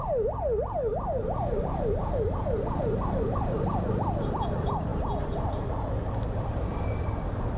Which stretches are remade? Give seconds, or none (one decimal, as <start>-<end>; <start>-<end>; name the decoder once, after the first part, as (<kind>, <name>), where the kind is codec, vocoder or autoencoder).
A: none